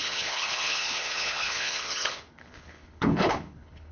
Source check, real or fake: fake